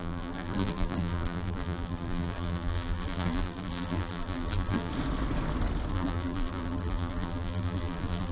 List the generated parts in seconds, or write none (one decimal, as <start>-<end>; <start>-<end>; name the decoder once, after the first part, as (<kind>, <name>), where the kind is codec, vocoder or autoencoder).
0.0-4.9 (vocoder, BigVGAN v2); 5.9-8.3